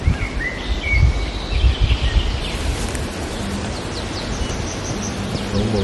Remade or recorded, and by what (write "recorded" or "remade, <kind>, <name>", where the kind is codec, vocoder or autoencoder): recorded